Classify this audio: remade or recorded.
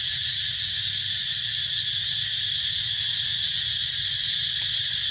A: recorded